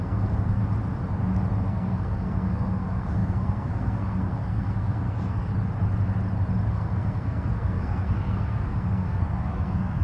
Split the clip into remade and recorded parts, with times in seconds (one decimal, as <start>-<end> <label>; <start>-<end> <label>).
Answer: 0.0-0.6 remade; 0.6-1.6 recorded; 1.6-5.5 remade; 5.5-6.7 recorded; 6.7-10.0 remade